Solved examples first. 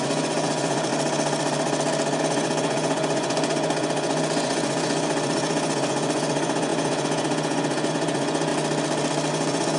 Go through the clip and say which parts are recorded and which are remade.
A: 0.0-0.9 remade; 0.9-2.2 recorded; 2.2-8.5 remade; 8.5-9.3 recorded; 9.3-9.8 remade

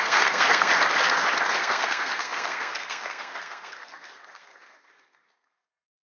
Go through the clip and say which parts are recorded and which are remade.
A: 0.0-0.7 remade; 0.7-1.5 recorded; 1.5-6.0 remade

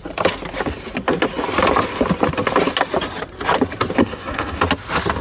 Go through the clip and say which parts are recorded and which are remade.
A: 0.0-4.0 recorded; 4.0-4.6 remade; 4.6-5.2 recorded

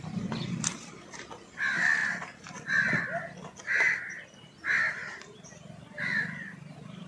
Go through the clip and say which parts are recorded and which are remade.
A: 0.0-7.1 recorded

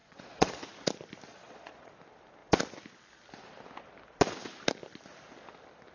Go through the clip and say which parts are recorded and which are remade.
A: 0.0-0.6 remade; 0.6-1.3 recorded; 1.3-1.9 remade; 1.9-5.9 recorded